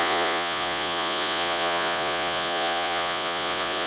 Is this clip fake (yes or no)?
yes